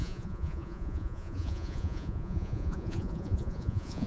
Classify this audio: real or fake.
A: fake